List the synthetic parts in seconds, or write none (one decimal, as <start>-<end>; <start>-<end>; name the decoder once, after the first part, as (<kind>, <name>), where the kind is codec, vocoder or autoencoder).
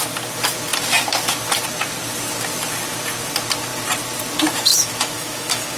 4.7-5.8 (autoencoder, DAC-VAE)